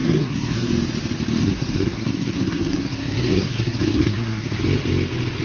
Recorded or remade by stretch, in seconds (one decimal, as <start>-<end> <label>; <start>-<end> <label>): 0.0-0.7 remade; 0.7-1.4 recorded; 1.4-4.6 remade; 4.6-5.4 recorded